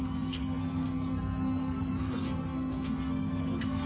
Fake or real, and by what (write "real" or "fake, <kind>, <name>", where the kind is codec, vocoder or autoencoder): fake, codec, SNAC